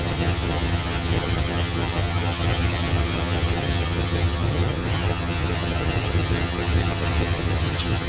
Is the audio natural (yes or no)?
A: no